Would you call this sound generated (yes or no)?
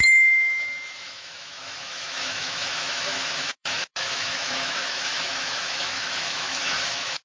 yes